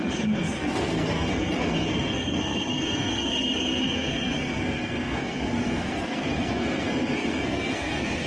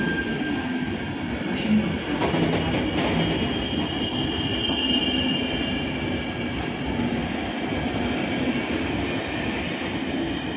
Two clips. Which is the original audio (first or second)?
second